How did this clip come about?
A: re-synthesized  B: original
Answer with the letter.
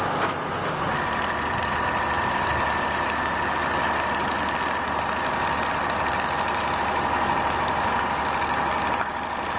B